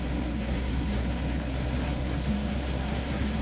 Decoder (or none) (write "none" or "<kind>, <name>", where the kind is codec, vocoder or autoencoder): codec, SNAC